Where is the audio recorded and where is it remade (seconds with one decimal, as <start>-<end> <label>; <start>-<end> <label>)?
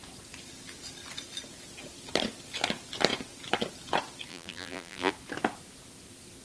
0.0-4.3 recorded; 4.3-5.1 remade; 5.1-6.4 recorded